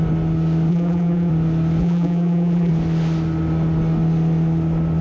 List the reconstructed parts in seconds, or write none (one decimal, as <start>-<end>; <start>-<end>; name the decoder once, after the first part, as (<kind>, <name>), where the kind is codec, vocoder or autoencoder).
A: 0.7-1.3 (vocoder, BigVGAN v2); 1.8-2.7